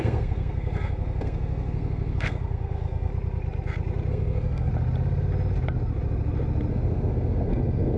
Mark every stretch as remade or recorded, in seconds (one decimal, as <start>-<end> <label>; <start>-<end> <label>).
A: 0.0-3.1 remade; 3.1-4.1 recorded; 4.1-4.7 remade; 4.7-6.7 recorded; 6.7-8.0 remade